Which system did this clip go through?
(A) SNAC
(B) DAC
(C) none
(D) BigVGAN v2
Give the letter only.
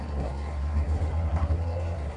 A